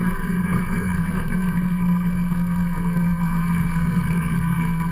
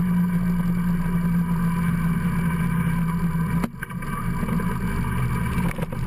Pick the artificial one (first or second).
first